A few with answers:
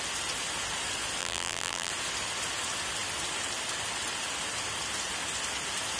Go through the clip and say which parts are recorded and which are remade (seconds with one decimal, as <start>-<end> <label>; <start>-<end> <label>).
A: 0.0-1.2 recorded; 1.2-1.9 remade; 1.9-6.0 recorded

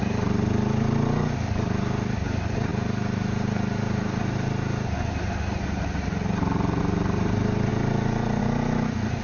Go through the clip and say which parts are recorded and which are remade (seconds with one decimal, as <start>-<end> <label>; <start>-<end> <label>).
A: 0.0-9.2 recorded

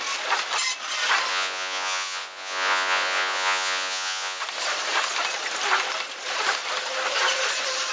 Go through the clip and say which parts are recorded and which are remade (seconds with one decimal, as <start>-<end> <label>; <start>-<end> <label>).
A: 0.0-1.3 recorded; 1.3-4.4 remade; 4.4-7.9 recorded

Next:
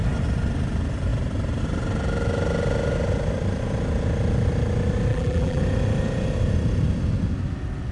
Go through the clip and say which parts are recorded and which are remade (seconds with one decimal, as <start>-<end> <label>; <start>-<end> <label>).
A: 0.0-5.1 recorded; 5.1-5.6 remade; 5.6-7.9 recorded

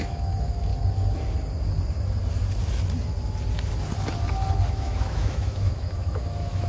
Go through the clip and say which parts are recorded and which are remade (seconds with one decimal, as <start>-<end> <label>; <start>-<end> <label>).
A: 0.0-0.7 remade; 0.7-4.7 recorded; 4.7-6.7 remade